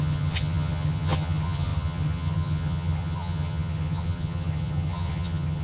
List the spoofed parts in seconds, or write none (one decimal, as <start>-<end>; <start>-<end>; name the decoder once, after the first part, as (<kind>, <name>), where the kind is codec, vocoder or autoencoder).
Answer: 0.0-5.6 (vocoder, HiFi-GAN)